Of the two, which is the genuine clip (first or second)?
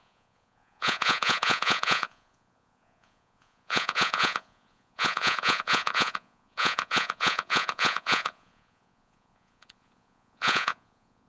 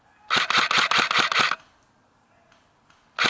second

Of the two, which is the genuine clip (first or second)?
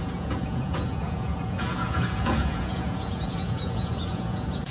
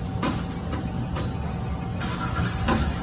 second